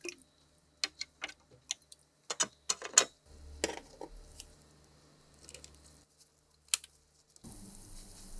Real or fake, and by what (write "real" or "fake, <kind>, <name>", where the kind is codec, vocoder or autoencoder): real